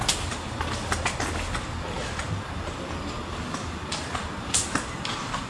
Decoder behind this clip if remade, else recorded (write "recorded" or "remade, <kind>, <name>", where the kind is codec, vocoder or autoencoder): recorded